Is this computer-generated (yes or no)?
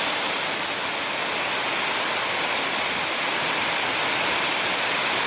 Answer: no